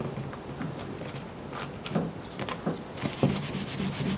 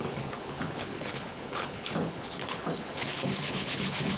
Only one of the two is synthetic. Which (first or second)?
second